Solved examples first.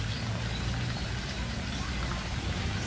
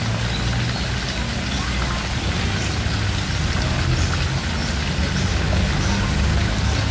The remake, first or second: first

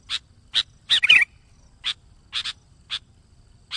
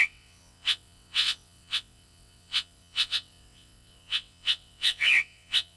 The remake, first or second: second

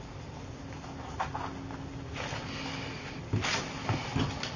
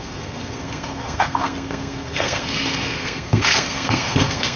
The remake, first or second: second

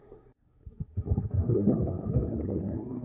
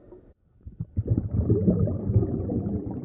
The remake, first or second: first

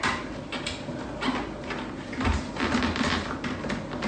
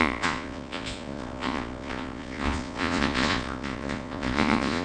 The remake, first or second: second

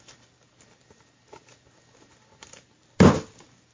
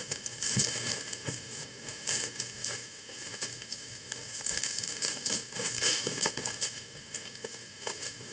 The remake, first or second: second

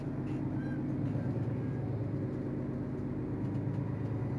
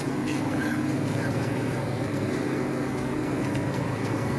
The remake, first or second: second